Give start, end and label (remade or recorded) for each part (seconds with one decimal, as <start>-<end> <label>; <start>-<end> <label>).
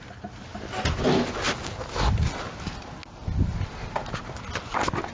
0.0-5.1 recorded